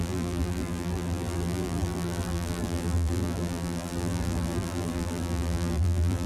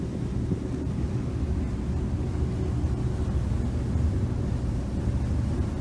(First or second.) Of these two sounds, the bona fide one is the second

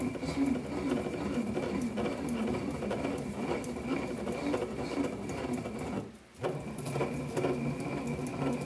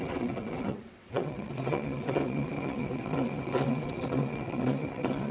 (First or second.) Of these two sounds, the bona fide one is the first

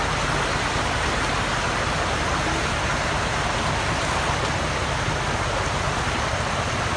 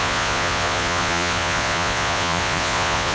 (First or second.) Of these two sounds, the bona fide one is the first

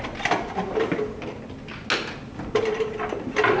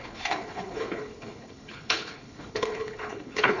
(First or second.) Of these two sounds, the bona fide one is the first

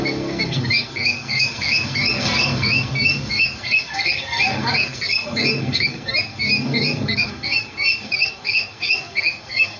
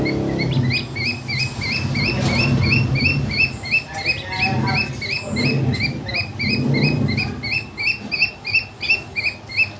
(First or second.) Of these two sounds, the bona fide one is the second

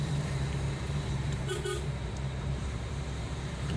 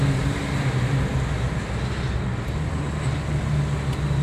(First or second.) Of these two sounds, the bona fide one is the second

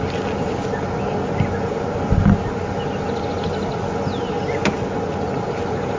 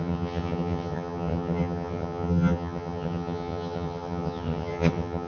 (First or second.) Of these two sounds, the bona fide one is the first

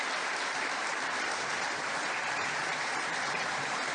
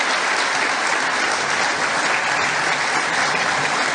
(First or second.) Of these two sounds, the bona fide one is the second